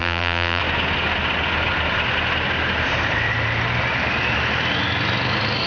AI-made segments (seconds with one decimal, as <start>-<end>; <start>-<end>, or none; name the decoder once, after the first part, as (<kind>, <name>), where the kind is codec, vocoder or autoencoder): 0.0-0.6 (vocoder, BigVGAN v2)